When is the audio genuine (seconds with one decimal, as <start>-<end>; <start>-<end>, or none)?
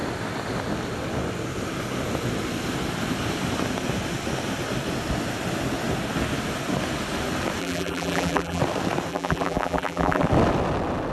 0.0-7.6; 8.6-9.1; 10.2-11.1